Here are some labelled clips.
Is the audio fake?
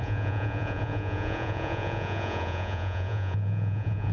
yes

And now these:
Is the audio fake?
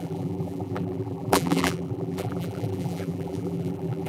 yes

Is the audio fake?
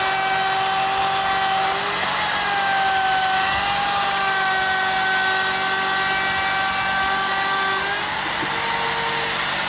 no